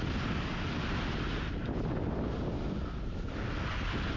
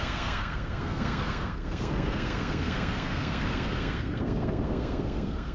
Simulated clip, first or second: second